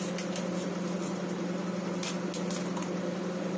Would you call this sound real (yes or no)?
yes